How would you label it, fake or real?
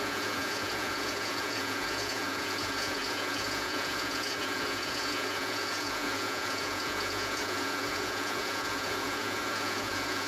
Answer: fake